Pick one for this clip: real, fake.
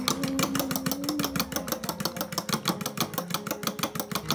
real